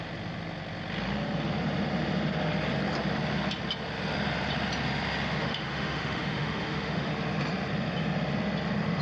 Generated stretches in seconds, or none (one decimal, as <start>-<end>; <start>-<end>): 5.4-7.1